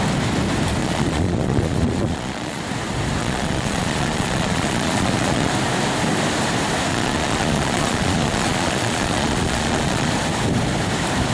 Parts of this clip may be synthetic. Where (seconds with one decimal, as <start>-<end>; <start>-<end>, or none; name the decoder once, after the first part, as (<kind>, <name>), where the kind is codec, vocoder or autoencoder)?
0.8-2.6 (vocoder, Vocos); 3.2-5.5; 6.9-10.1